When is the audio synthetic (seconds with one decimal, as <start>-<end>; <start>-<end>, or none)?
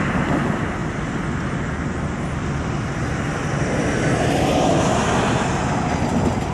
none